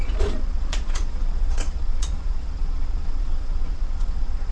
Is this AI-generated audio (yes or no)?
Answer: yes